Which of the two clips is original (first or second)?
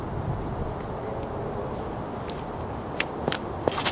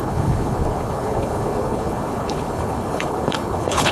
first